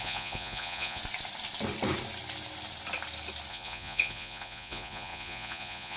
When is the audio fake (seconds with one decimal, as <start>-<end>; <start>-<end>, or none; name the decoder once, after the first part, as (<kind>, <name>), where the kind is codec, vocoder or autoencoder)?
0.0-1.0 (vocoder, Vocos); 3.5-6.0